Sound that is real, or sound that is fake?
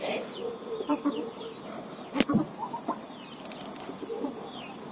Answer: fake